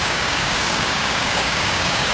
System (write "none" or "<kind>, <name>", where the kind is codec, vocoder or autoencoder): codec, DAC